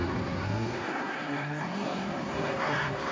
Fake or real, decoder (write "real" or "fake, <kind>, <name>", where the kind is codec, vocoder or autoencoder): fake, codec, SNAC